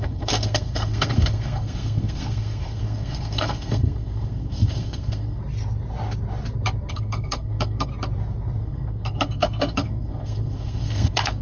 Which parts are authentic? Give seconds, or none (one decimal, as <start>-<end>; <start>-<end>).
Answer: 5.4-6.9; 7.9-8.6